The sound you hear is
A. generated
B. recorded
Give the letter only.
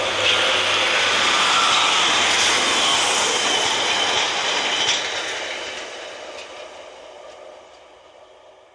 B